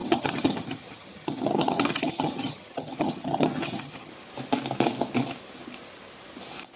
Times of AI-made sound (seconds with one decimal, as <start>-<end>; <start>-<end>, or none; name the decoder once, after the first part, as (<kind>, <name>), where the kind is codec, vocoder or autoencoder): 0.0-4.1 (vocoder, HiFi-GAN)